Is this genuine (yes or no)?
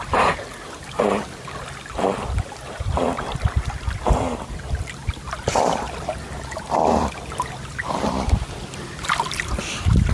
yes